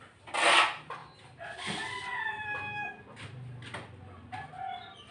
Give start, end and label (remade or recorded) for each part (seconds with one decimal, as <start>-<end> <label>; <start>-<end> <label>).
0.0-5.1 recorded